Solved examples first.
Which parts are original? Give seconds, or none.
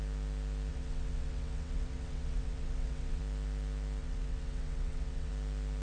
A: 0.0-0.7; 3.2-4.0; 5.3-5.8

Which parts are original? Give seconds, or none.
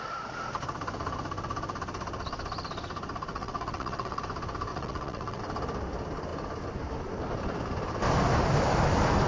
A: 0.0-3.3; 4.2-4.7; 5.4-9.3